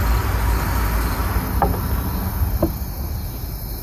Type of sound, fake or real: real